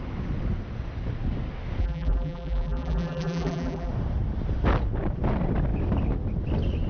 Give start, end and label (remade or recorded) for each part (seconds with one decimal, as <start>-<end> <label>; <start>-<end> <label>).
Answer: 0.0-1.8 recorded; 1.8-3.9 remade; 3.9-6.9 recorded